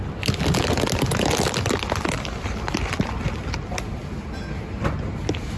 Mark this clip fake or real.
real